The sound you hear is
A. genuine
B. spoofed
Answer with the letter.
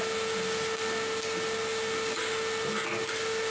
A